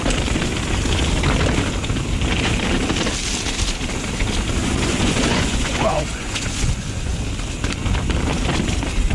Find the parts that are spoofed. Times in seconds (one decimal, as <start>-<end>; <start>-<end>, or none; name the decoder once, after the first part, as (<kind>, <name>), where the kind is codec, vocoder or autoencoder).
4.6-7.2 (vocoder, Vocos)